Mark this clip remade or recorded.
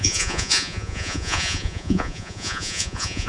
remade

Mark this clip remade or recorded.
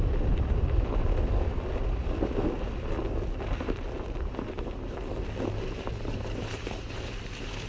recorded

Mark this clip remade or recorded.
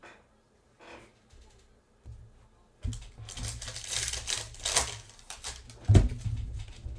recorded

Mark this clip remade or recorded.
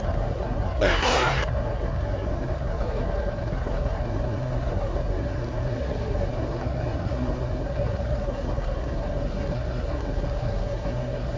remade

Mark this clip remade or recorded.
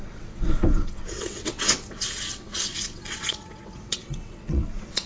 remade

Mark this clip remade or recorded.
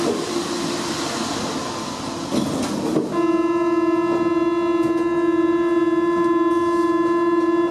recorded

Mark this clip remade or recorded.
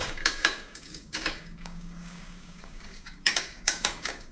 remade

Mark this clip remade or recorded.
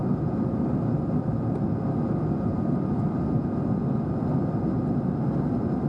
recorded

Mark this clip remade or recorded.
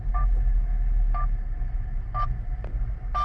recorded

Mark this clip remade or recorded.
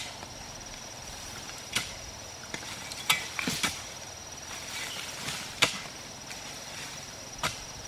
recorded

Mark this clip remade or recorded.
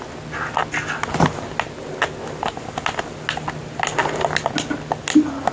recorded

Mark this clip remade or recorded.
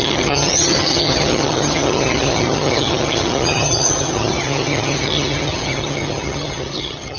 remade